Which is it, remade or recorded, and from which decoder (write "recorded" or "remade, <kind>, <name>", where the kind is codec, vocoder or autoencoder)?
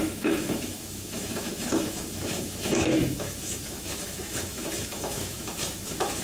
remade, autoencoder, DAC-VAE